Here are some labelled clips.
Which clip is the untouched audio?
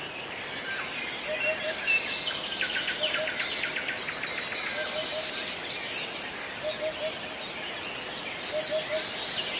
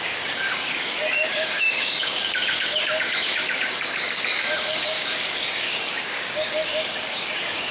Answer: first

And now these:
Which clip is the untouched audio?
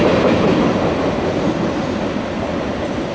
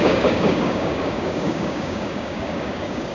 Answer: first